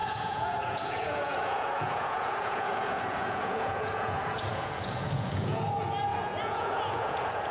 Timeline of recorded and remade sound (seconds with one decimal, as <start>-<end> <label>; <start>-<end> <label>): 0.0-7.5 remade